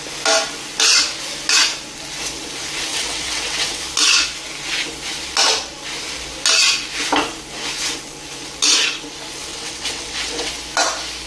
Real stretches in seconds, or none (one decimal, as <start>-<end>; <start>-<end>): 0.0-2.9; 3.8-9.5; 10.5-11.3